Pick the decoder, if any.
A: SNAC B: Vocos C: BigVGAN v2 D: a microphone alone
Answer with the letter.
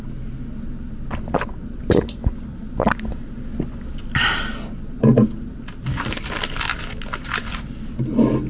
D